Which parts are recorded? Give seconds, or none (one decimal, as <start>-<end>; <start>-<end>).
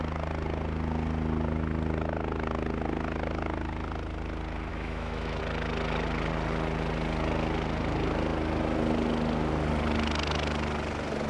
0.0-4.7; 5.4-11.3